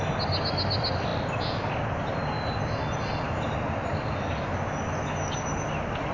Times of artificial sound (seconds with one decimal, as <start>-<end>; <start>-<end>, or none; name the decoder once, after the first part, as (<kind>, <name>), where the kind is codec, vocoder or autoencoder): none